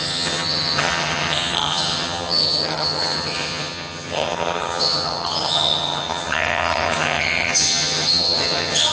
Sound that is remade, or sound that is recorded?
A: remade